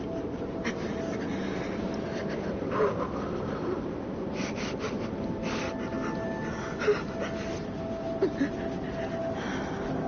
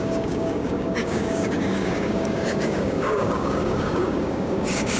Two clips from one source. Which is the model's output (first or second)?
second